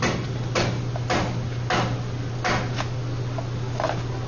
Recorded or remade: recorded